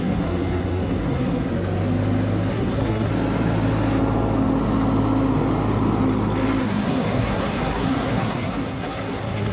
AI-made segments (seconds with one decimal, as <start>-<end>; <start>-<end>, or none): 0.0-1.5; 2.5-3.1; 6.6-9.5